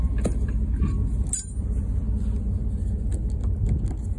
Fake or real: real